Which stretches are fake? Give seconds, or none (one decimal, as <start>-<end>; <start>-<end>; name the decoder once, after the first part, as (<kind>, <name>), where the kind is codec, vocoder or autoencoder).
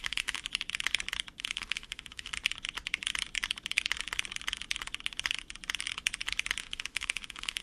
0.0-0.4 (autoencoder, DAC-VAE); 1.4-2.3; 6.6-7.6